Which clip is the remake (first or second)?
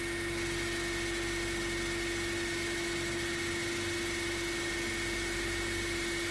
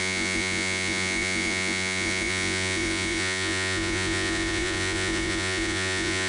second